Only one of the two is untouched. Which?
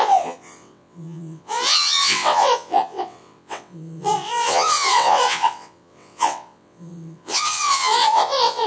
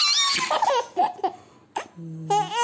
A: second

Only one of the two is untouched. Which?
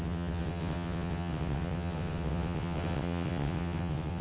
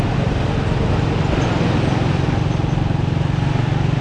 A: second